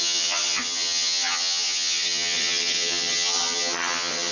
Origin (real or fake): fake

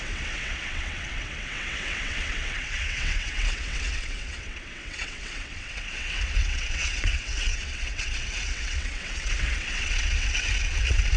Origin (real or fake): fake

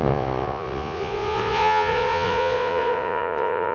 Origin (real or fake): fake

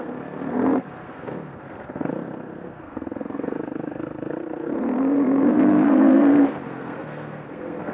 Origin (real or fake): fake